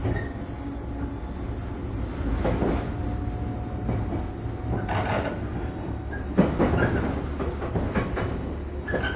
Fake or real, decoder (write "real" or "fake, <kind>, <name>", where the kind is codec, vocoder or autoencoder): real